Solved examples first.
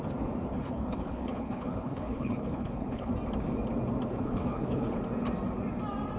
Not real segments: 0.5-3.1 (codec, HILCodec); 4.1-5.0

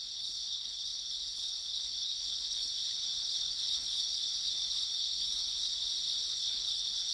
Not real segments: 0.0-5.7 (codec, HILCodec); 6.3-7.1

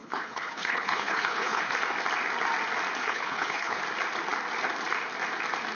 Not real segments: 0.0-1.6 (codec, HILCodec); 3.0-3.8